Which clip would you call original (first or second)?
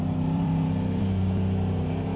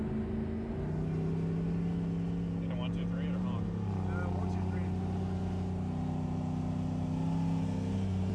second